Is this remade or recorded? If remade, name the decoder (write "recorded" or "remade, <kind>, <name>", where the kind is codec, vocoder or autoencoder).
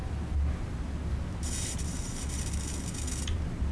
recorded